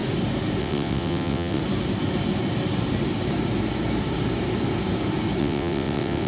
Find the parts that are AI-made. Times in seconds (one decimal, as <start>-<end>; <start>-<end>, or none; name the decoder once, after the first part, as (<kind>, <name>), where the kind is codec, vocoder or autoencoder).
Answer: 0.6-1.6 (vocoder, WaveNeXt); 5.4-6.3